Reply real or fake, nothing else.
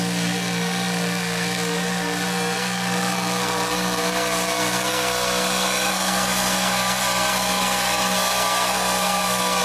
fake